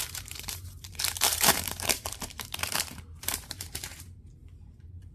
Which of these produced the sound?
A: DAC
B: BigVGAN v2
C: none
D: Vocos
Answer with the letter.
B